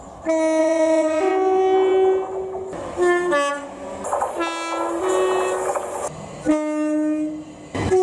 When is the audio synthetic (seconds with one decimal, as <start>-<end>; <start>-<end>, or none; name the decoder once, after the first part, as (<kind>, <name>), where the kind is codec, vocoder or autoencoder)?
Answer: 0.6-1.3 (vocoder, Vocos)